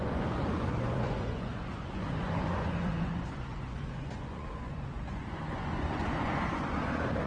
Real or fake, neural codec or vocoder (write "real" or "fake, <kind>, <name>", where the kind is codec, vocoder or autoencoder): fake, vocoder, Vocos